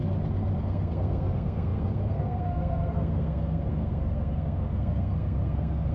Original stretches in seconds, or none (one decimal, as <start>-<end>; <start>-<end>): 0.0-0.6